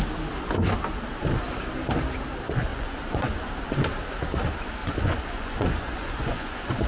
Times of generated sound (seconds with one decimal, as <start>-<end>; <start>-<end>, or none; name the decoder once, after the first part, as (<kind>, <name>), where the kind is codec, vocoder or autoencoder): 2.7-3.5 (vocoder, Vocos); 4.8-6.9